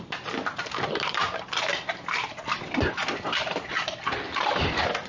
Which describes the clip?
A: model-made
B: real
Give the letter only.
A